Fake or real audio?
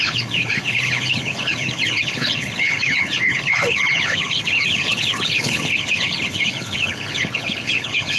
fake